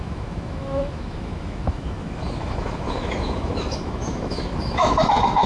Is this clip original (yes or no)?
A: no